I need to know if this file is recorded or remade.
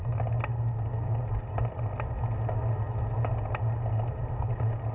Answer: recorded